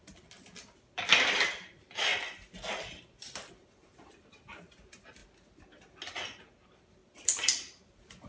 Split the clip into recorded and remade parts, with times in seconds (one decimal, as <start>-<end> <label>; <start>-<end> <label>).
0.0-2.1 remade; 2.1-2.7 recorded; 2.7-5.2 remade; 5.2-6.4 recorded; 6.4-8.3 remade